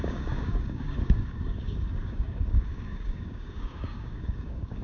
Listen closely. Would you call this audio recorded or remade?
remade